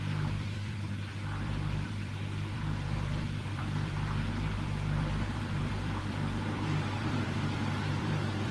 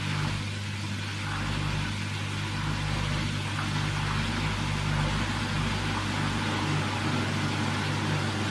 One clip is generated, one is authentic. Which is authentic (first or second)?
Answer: second